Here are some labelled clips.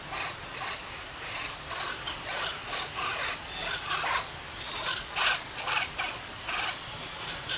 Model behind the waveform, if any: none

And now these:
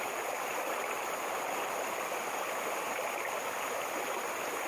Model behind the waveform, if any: none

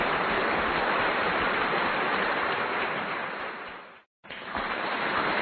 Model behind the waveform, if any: none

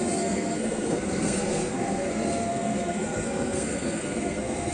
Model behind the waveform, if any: codec, SNAC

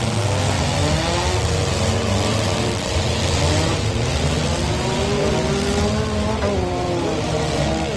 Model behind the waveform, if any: none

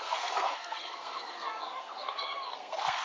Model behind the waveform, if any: codec, SNAC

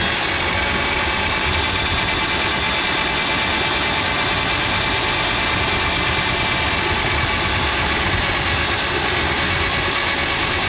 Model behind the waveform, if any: none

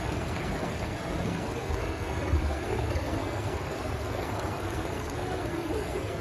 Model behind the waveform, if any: codec, SNAC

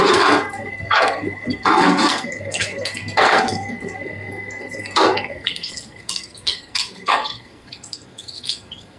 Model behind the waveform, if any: codec, SNAC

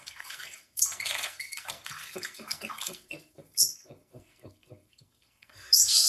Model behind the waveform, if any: codec, SNAC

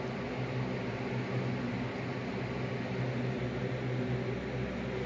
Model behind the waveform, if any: none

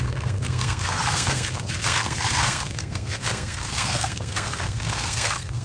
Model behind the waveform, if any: codec, SNAC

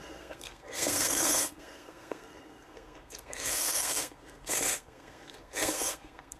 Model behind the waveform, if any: codec, SNAC